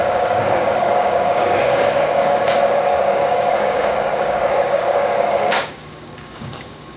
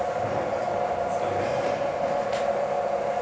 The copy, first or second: first